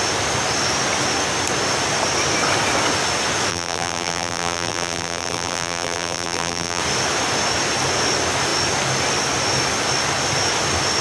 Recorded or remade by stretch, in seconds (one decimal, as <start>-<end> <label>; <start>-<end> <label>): 0.0-3.5 recorded; 3.5-6.8 remade; 6.8-11.0 recorded